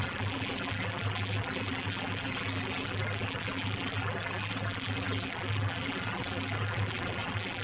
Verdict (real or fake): fake